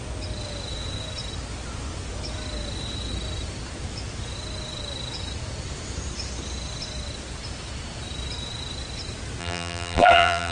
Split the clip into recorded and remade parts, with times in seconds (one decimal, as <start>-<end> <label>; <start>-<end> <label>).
0.0-9.4 recorded; 9.4-10.5 remade